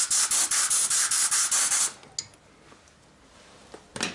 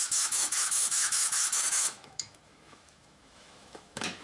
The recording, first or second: first